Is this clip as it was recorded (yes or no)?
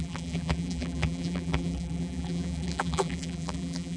no